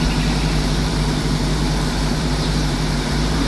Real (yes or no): no